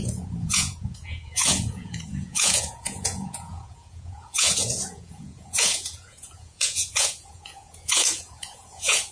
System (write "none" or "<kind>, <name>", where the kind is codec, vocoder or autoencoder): vocoder, Vocos